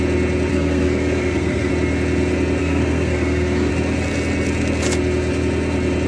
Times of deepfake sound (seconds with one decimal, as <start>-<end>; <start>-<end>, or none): 0.5-1.7; 2.6-3.7